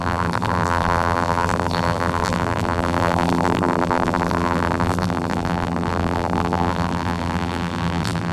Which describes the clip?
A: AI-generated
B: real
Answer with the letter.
A